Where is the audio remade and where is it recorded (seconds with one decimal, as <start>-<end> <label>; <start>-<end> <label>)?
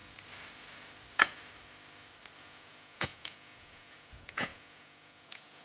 0.0-2.4 recorded; 2.4-5.6 remade